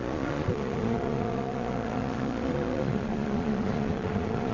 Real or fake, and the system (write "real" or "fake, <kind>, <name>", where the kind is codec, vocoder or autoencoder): fake, vocoder, Vocos